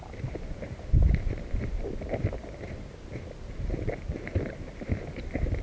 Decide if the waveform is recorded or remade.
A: recorded